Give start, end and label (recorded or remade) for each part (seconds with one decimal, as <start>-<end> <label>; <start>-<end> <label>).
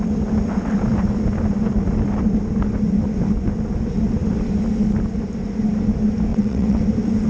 0.0-6.3 recorded; 6.3-6.8 remade; 6.8-7.3 recorded